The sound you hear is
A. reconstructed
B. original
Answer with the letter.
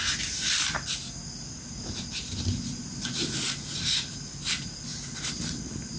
B